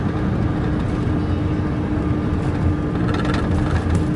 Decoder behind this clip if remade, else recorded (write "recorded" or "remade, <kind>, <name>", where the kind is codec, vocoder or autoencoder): recorded